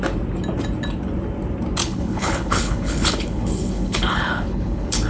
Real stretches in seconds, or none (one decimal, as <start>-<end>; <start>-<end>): 0.0-1.8